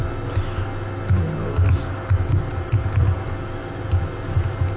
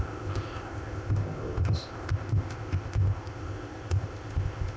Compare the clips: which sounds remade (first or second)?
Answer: second